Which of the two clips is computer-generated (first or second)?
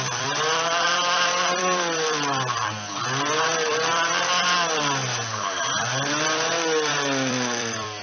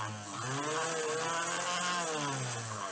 first